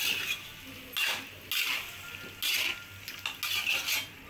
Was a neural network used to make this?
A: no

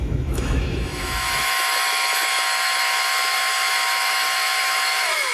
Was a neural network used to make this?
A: yes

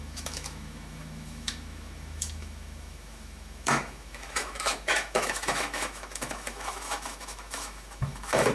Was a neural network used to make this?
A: yes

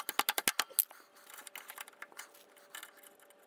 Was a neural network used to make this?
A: no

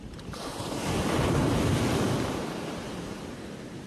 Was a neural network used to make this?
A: no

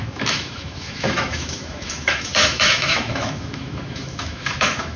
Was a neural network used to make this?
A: yes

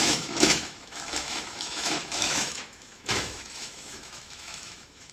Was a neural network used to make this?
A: yes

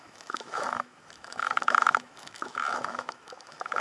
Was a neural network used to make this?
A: yes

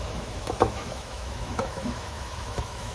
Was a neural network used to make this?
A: yes